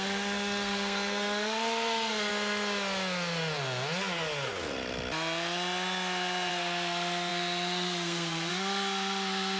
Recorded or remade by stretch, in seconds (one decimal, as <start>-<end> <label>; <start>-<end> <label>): 0.0-2.3 remade; 2.3-6.5 recorded; 6.5-9.6 remade